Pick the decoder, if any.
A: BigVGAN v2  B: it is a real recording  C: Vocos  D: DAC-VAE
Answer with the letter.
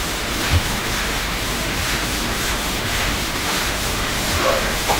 D